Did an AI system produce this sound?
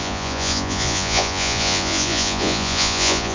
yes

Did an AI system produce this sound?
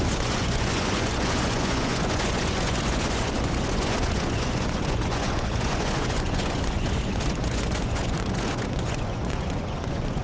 yes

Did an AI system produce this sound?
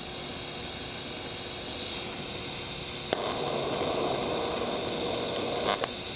no